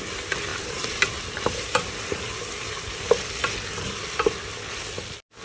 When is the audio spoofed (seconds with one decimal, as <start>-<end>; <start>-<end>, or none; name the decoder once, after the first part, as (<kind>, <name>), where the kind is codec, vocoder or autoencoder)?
0.5-3.5 (vocoder, BigVGAN v2)